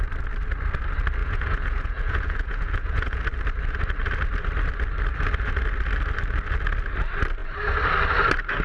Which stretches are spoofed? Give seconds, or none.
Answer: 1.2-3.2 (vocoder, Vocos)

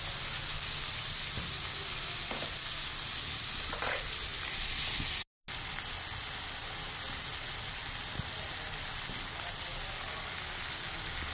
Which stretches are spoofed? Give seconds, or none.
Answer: none

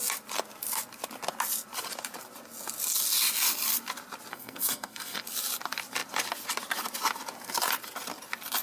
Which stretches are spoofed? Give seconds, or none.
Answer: 4.3-5.2 (codec, SNAC)

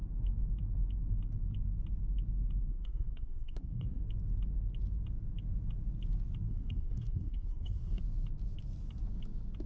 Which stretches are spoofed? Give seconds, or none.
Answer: 2.7-4.0 (codec, SNAC); 6.5-8.0

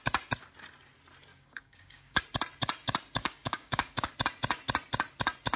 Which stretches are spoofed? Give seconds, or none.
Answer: 1.3-2.2 (codec, DAC); 3.2-4.1

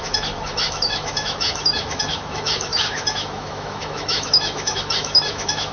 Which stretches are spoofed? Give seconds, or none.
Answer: 0.0-5.7 (autoencoder, DAC-VAE)

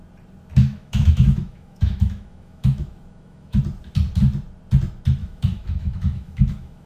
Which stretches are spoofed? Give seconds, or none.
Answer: 0.6-3.6 (autoencoder, DAC-VAE); 5.2-6.9